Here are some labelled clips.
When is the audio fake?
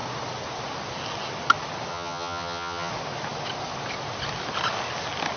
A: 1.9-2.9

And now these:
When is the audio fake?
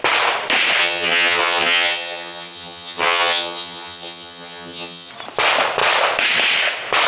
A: 0.8-5.1